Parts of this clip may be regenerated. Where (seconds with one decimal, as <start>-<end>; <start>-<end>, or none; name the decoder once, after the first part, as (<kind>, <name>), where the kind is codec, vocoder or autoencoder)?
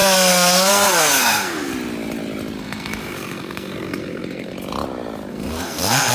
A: 0.0-1.7 (codec, SNAC); 2.6-4.5; 5.3-6.1